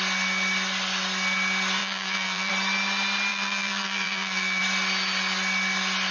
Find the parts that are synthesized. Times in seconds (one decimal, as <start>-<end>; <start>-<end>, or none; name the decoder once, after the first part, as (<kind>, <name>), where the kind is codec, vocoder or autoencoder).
1.8-2.5 (vocoder, BigVGAN v2); 3.3-4.6